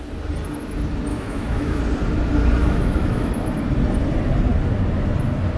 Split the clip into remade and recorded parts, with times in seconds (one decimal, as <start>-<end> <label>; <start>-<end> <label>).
0.0-1.1 recorded; 1.1-1.8 remade; 1.8-2.6 recorded; 2.6-3.3 remade; 3.3-5.6 recorded